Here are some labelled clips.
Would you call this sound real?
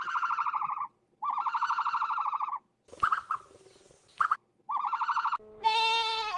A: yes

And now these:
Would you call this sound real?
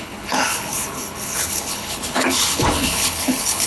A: no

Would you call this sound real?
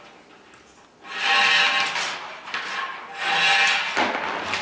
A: yes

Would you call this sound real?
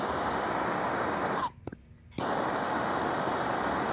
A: yes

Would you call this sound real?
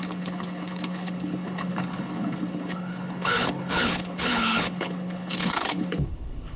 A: no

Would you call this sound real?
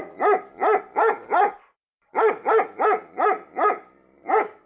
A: yes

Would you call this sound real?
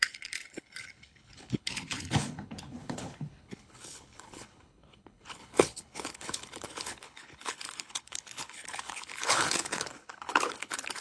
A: no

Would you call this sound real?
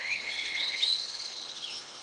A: no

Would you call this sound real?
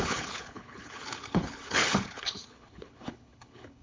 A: no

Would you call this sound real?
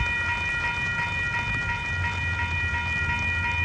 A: yes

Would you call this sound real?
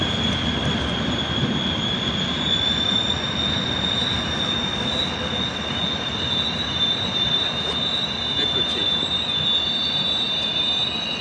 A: yes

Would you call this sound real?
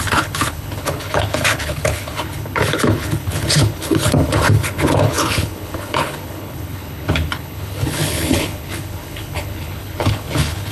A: no